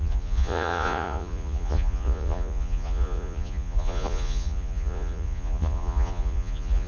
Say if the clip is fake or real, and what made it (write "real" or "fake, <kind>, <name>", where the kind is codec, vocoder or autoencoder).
fake, vocoder, Vocos